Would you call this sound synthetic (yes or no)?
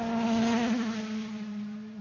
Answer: no